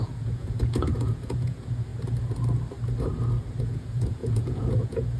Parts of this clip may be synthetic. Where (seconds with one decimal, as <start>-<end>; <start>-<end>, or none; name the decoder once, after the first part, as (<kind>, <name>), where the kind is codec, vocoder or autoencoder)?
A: 0.0-1.9 (vocoder, Vocos); 3.6-5.2